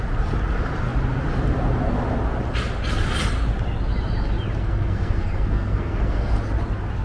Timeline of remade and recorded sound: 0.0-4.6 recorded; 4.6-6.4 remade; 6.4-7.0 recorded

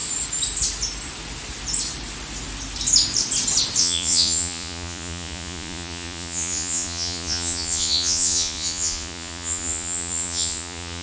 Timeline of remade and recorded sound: 0.0-3.8 recorded; 3.8-11.0 remade

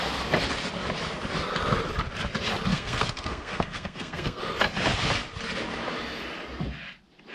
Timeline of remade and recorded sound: 0.0-2.7 recorded; 2.7-4.4 remade; 4.4-7.3 recorded